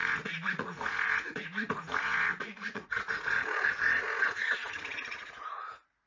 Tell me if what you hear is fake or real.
fake